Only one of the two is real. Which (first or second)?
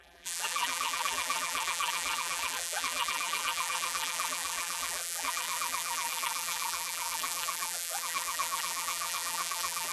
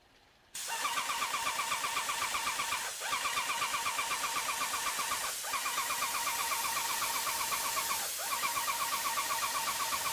second